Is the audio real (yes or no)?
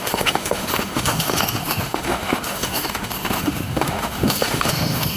no